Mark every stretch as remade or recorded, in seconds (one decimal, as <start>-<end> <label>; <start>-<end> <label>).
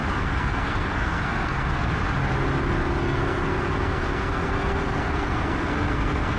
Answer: 0.0-1.9 remade; 1.9-3.0 recorded; 3.0-6.4 remade